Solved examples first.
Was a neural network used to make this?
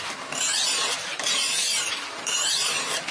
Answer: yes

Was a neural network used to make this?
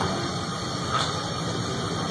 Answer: no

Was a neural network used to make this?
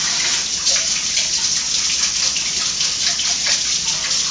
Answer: no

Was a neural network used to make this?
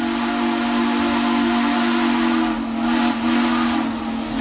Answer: no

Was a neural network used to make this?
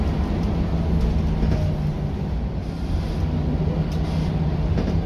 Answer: no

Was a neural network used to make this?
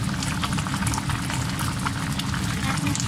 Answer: no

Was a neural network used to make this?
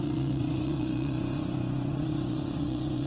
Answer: yes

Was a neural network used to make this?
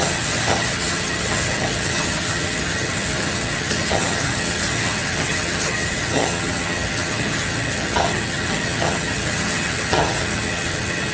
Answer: yes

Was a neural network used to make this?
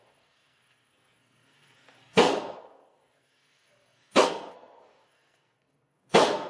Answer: yes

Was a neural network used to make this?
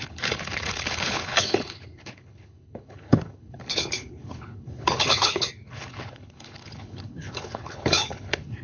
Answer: yes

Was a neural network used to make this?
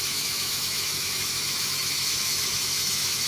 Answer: yes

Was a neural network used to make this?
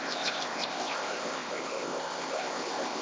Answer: yes